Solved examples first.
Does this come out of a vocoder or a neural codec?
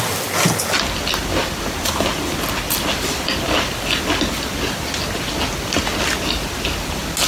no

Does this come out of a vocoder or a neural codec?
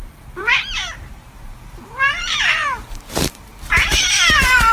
yes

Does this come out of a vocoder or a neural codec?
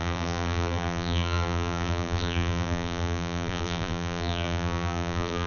yes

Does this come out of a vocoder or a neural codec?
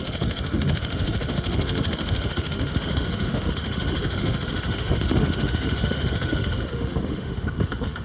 yes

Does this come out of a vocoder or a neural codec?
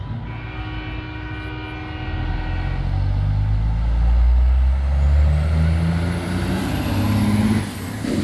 no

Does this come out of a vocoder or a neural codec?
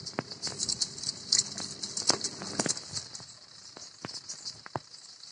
no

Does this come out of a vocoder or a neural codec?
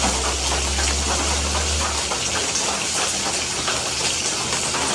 no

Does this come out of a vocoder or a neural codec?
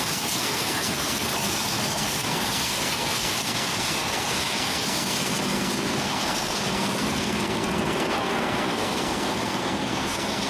yes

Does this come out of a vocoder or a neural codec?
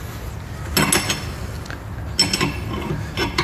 no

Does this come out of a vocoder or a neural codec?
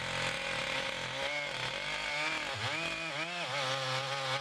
no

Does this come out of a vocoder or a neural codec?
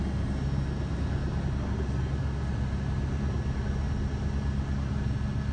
no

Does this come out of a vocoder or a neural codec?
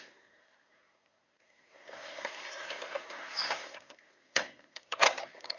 yes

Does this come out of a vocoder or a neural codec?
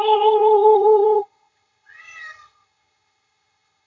yes